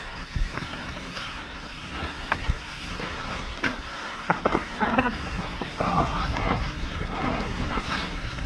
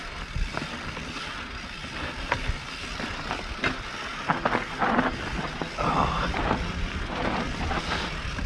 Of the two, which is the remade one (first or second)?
first